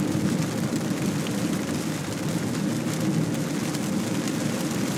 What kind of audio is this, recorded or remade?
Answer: recorded